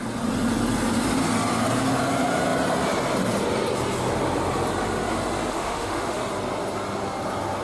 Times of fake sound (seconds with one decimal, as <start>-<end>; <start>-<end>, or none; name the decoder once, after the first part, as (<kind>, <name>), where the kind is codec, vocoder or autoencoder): 5.5-6.2 (autoencoder, DAC-VAE)